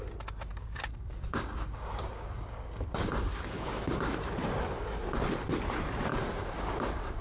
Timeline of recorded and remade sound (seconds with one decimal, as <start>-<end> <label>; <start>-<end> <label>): 0.0-0.5 recorded; 0.5-4.1 remade; 4.1-6.1 recorded; 6.1-7.2 remade